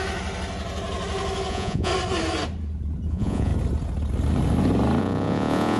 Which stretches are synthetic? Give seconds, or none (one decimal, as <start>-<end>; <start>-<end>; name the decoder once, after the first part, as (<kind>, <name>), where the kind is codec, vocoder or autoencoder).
1.5-1.9 (vocoder, Vocos); 3.1-3.5; 5.0-5.8